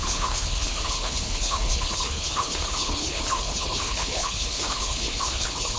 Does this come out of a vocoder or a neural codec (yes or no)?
yes